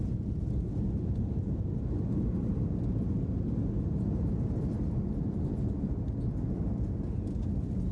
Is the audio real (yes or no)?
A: yes